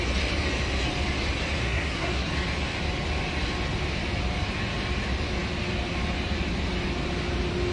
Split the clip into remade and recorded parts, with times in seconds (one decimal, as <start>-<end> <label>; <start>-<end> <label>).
0.0-1.6 recorded; 1.6-2.3 remade; 2.3-7.7 recorded